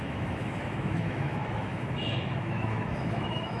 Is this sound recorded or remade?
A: remade